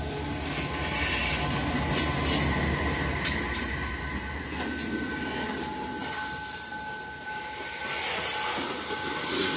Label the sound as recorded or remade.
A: recorded